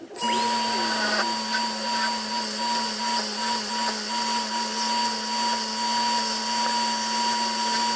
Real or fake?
real